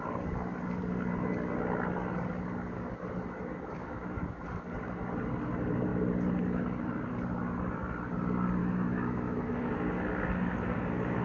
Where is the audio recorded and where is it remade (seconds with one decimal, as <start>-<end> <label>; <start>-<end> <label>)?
0.0-3.8 recorded; 3.8-4.4 remade; 4.4-8.6 recorded; 8.6-9.7 remade; 9.7-11.2 recorded